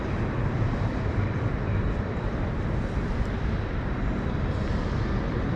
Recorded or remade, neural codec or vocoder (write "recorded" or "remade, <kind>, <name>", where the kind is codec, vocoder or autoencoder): remade, vocoder, BigVGAN v2